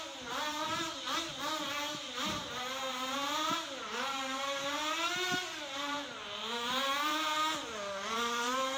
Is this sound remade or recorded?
remade